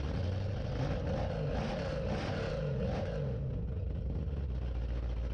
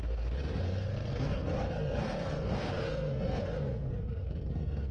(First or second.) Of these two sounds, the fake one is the second